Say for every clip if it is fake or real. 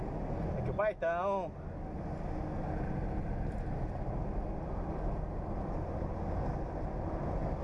real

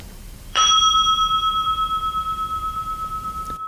fake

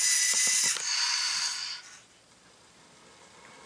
real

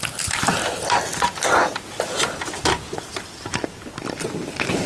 real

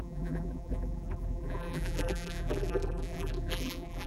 fake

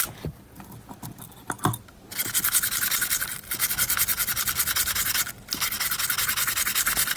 real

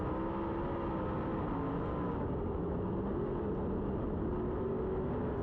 real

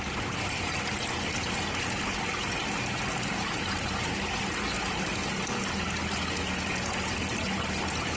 real